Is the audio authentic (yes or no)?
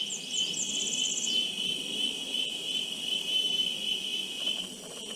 yes